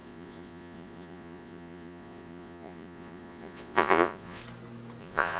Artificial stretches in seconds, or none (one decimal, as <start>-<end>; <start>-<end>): 0.0-4.4; 5.0-5.4